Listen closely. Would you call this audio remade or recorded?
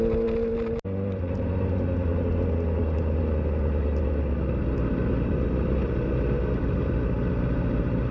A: recorded